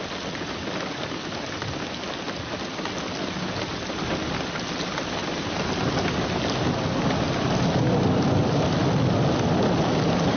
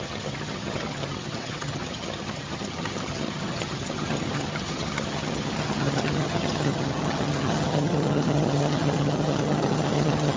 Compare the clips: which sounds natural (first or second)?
first